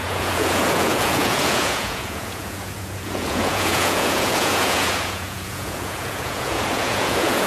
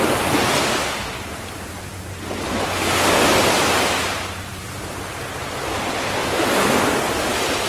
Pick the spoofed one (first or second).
first